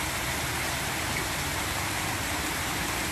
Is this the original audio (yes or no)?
yes